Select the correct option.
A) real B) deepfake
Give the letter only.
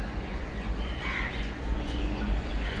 B